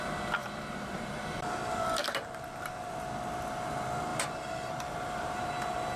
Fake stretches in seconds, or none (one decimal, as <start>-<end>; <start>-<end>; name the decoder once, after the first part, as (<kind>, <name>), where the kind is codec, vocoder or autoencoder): 0.4-1.6 (vocoder, BigVGAN v2); 2.0-2.9; 4.1-5.5